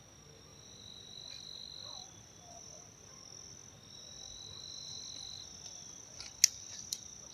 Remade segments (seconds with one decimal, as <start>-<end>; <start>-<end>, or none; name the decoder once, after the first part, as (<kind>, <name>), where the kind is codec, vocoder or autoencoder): none